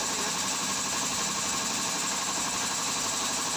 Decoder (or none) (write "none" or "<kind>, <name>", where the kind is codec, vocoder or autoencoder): none